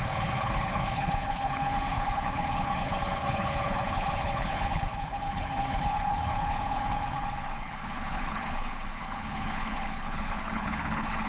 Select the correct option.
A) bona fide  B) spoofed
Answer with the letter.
B